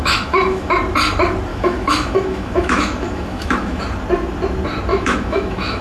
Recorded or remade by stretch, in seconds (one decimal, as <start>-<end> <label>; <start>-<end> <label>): 0.0-0.7 remade; 0.7-1.5 recorded; 1.5-3.8 remade; 3.8-4.9 recorded; 4.9-5.8 remade